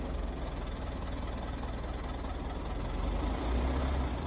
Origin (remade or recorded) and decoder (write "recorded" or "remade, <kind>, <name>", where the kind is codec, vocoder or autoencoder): recorded